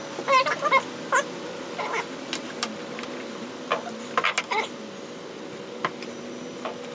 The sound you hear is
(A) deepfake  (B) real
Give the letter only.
B